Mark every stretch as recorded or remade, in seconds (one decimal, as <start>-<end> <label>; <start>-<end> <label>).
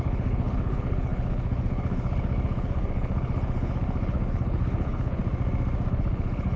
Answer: 0.0-5.2 remade; 5.2-5.9 recorded; 5.9-6.6 remade